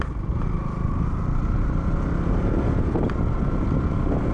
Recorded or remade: recorded